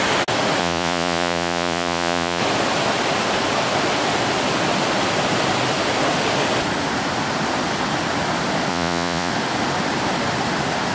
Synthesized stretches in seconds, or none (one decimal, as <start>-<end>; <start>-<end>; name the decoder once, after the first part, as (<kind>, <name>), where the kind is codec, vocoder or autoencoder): 0.6-2.4 (vocoder, Vocos); 8.7-9.3